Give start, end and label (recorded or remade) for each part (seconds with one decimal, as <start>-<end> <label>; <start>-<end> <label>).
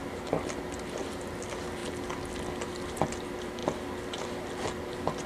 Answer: 0.0-5.3 recorded